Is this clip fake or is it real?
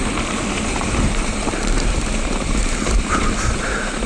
fake